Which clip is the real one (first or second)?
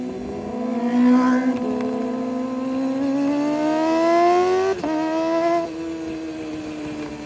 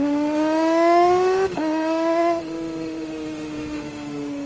first